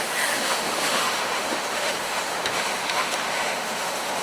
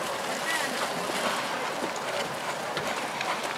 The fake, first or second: first